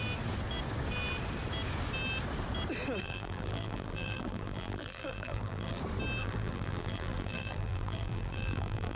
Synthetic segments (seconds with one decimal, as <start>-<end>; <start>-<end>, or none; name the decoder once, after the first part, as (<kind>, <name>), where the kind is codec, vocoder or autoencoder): 3.0-5.8 (vocoder, BigVGAN v2); 6.2-9.0